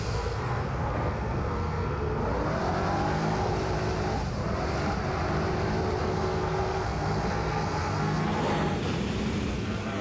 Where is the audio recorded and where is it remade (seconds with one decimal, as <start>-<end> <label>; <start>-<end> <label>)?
0.0-2.2 remade; 2.2-3.1 recorded; 3.1-3.5 remade; 3.5-6.0 recorded; 6.0-8.8 remade; 8.8-9.5 recorded; 9.5-10.0 remade